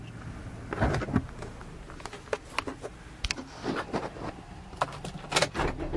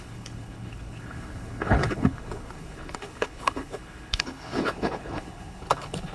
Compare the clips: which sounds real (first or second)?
first